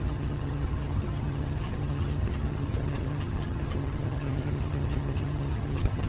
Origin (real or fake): fake